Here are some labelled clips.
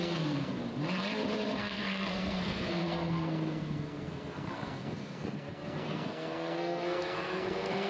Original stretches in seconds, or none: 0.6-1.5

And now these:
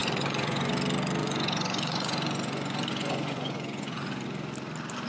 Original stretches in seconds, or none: 0.7-1.2; 4.1-5.1

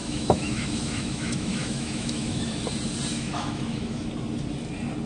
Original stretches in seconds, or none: 2.5-3.1; 4.1-5.1

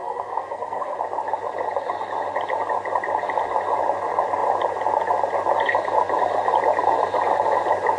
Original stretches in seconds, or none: 1.0-8.0

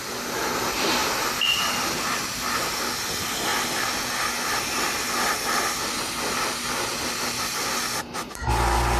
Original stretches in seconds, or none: 0.0-9.0